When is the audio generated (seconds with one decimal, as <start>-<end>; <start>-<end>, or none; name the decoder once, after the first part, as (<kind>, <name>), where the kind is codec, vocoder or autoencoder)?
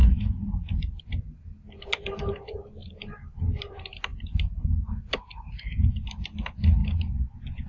0.0-1.0 (vocoder, BigVGAN v2); 2.8-3.4